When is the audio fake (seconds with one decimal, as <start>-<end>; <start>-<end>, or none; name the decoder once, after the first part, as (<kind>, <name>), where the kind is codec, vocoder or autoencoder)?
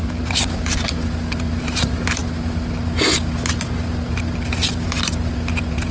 0.0-2.2 (vocoder, BigVGAN v2)